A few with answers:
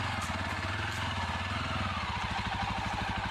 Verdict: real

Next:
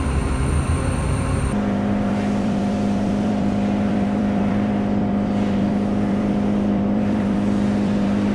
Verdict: fake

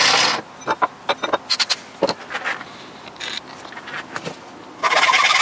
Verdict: real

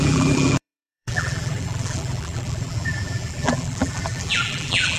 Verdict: fake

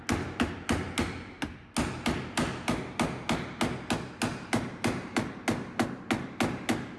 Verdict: real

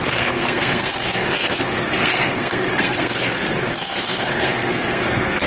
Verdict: fake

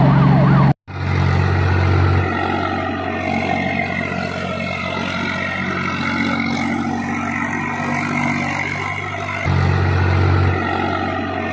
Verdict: real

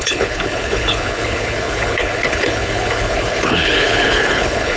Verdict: fake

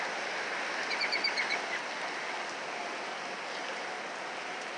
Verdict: real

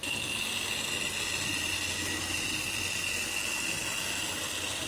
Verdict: real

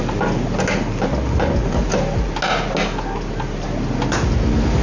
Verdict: real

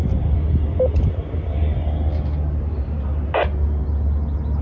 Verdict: real